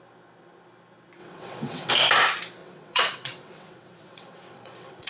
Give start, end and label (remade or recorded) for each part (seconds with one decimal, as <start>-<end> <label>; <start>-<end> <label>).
0.0-1.2 recorded; 1.2-1.9 remade; 1.9-2.6 recorded; 2.6-5.1 remade